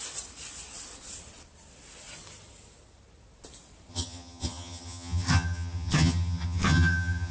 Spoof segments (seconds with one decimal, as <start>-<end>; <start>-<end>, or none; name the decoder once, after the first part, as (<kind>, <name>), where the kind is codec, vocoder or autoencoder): 3.9-7.3 (vocoder, HiFi-GAN)